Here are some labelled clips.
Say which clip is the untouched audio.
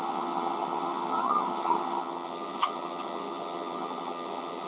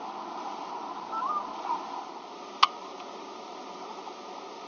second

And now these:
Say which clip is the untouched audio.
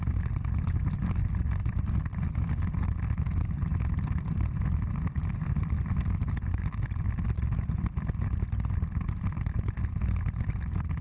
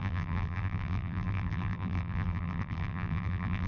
first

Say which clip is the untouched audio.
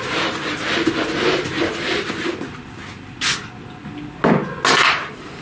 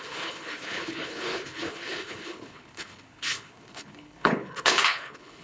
first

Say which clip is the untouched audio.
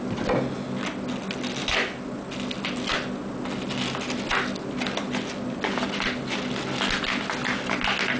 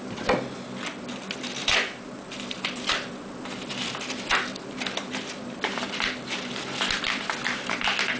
first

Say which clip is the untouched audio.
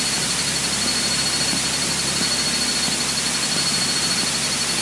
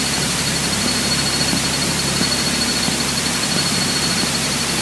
first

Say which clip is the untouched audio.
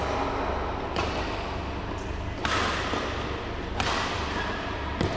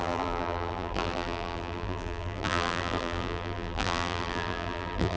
first